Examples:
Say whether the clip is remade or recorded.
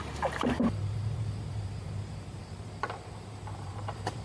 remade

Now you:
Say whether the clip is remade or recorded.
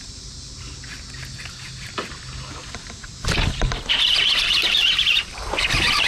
recorded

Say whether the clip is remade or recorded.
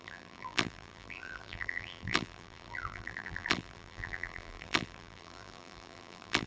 remade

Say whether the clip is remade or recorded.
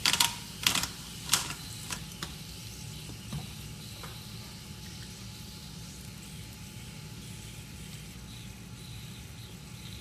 recorded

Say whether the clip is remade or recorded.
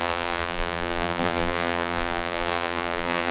remade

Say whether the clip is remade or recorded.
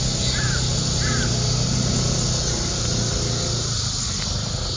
recorded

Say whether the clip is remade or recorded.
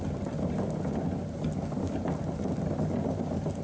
recorded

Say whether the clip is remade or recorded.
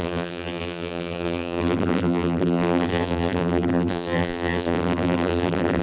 remade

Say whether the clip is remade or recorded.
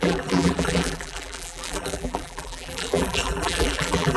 remade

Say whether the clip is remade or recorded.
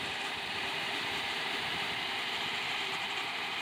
remade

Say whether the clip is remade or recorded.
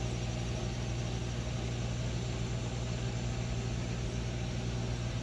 recorded